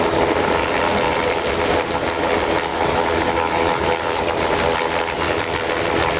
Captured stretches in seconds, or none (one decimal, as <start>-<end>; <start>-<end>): 0.0-2.7; 4.2-6.2